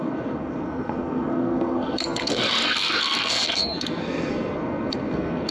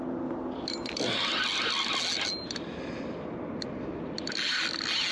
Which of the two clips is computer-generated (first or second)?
first